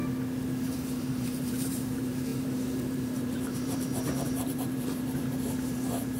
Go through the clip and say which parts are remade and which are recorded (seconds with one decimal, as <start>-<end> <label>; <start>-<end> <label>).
0.0-0.7 recorded; 0.7-6.2 remade